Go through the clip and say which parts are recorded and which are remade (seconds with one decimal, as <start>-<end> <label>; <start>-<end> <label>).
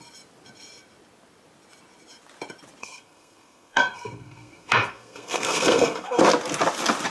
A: 0.0-2.8 recorded; 2.8-6.2 remade; 6.2-7.1 recorded